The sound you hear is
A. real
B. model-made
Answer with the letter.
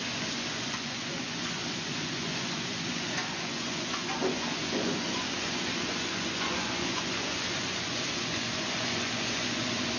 B